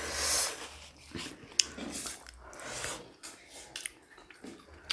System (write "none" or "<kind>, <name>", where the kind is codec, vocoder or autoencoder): none